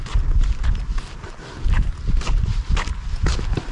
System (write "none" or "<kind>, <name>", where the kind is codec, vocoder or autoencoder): none